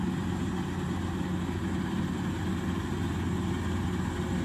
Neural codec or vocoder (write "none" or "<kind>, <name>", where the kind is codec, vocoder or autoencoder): none